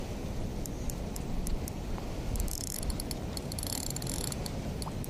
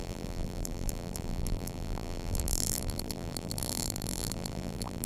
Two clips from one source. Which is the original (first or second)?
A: first